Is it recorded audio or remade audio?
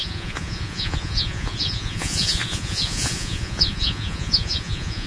remade